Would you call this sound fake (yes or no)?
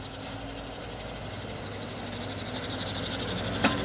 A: no